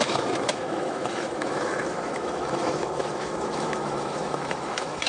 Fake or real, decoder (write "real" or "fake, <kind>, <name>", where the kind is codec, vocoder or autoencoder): fake, autoencoder, DAC-VAE